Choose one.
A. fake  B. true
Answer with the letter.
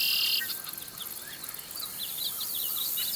B